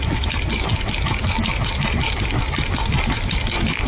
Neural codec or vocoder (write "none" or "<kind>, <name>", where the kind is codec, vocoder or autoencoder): none